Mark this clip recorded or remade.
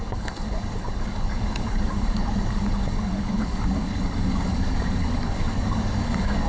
remade